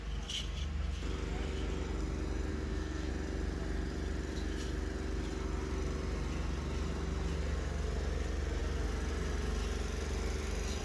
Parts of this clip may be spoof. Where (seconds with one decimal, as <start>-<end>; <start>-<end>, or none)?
2.5-3.1